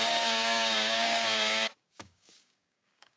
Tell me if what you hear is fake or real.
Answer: fake